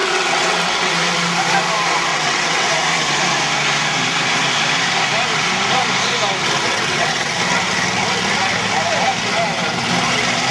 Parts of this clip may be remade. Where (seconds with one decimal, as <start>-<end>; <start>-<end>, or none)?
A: 0.0-0.9; 2.1-2.7; 6.7-7.3